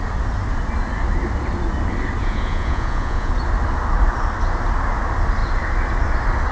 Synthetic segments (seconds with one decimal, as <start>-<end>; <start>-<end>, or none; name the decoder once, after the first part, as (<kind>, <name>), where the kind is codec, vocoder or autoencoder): 2.2-3.3 (vocoder, Vocos)